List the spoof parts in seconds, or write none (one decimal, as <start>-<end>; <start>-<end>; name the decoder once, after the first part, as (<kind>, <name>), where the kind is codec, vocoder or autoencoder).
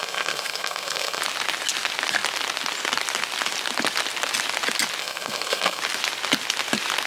0.0-1.2 (codec, SNAC); 5.0-5.8